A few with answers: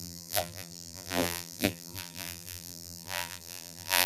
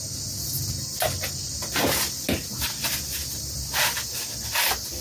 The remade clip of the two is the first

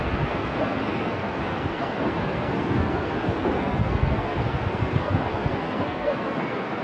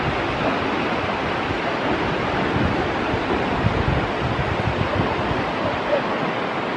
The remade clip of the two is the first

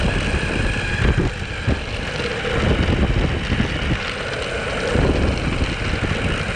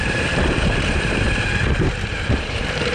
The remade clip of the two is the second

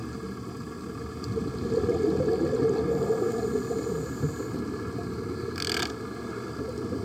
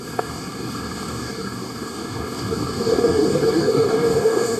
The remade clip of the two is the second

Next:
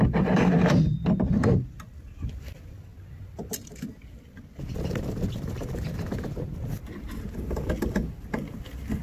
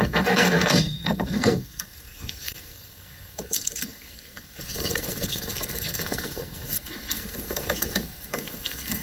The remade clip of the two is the second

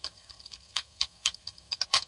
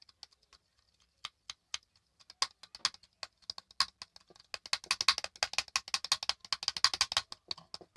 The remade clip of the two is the first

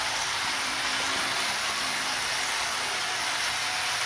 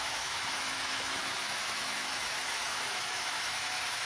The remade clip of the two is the second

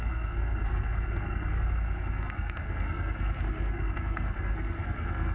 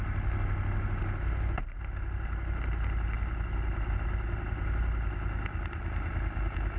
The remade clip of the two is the first